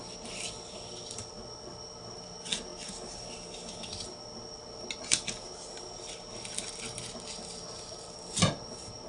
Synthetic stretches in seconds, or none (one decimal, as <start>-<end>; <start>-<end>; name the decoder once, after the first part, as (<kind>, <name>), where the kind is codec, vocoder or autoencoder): none